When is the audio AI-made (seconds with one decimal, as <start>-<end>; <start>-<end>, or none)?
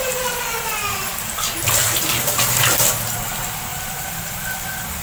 3.7-4.6